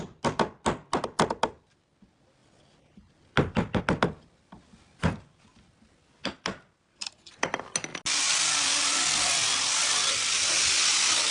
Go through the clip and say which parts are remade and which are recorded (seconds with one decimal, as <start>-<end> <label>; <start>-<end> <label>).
0.0-11.3 recorded